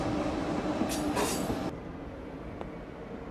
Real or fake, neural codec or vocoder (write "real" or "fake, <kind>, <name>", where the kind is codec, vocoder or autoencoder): real